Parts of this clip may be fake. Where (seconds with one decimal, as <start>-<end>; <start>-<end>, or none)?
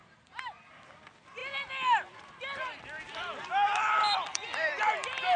0.0-0.7; 4.0-5.4